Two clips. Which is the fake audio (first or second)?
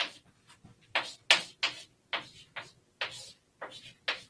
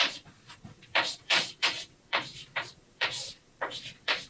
second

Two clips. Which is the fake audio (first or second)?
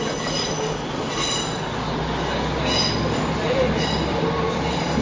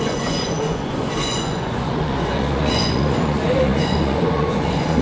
second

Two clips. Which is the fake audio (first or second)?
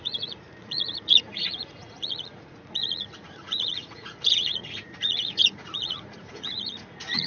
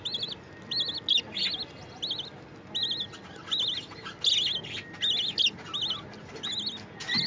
first